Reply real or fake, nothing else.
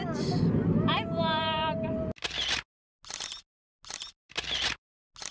real